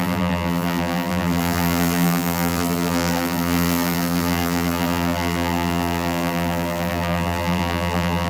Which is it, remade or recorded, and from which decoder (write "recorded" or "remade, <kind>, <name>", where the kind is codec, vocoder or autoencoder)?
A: remade, vocoder, BigVGAN v2